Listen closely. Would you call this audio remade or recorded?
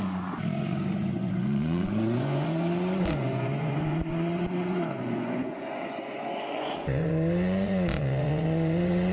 remade